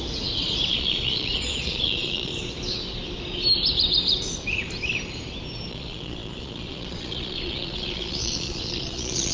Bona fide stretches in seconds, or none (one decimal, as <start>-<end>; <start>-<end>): 0.0-0.7; 2.3-5.7